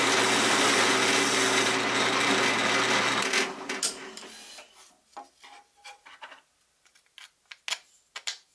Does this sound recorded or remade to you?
recorded